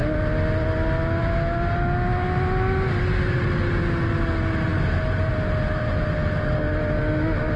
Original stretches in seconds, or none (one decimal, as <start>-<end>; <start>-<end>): 0.0-7.6